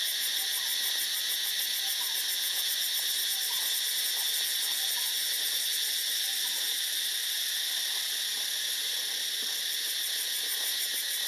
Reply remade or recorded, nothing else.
recorded